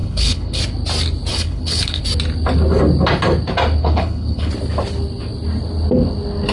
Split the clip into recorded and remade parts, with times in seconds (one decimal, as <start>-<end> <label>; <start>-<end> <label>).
0.0-0.6 remade; 0.6-1.3 recorded; 1.3-2.0 remade; 2.0-3.8 recorded; 3.8-4.5 remade; 4.5-6.5 recorded